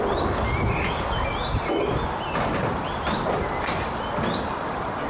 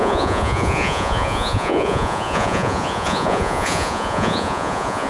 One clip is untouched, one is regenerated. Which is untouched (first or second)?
first